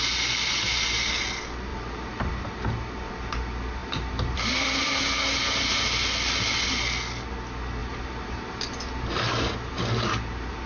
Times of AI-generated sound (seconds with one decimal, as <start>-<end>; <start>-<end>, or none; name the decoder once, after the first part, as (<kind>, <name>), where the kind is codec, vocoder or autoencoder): 1.7-2.5 (vocoder, BigVGAN v2); 3.8-5.0; 7.8-10.7